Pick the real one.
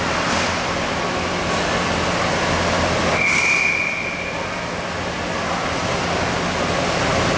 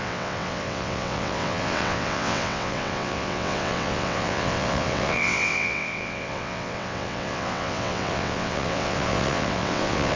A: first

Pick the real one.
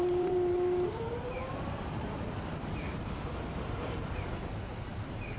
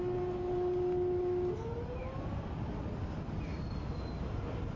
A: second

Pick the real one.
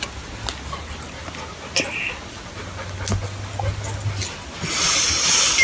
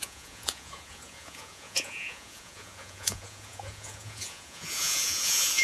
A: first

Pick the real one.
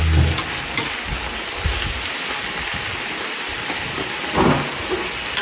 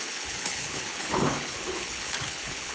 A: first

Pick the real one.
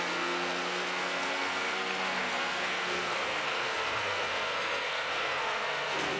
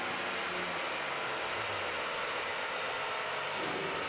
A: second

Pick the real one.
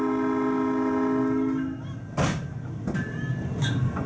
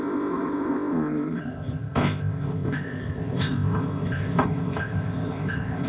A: first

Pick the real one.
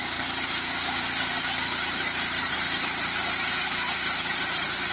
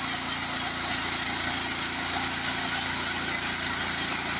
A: second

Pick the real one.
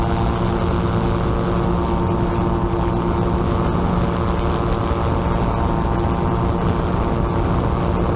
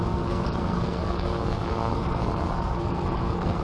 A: first